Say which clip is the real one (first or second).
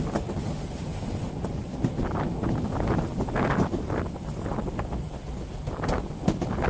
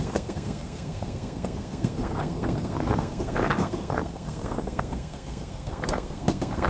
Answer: first